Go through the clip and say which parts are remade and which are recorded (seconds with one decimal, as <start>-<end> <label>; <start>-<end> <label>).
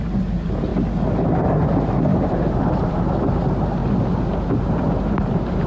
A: 0.0-0.7 remade; 0.7-1.4 recorded; 1.4-3.8 remade; 3.8-4.8 recorded; 4.8-5.7 remade